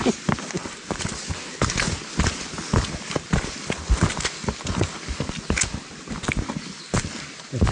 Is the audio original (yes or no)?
yes